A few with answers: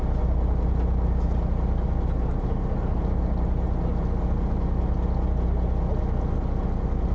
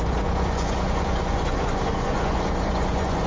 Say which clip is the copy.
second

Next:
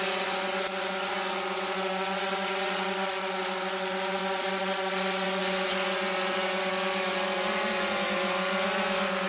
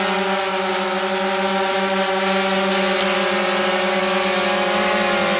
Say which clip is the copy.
first